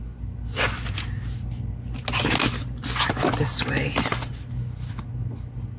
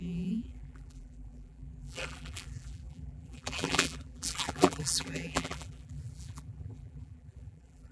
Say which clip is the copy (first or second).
second